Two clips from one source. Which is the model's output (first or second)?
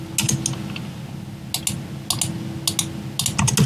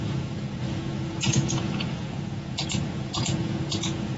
second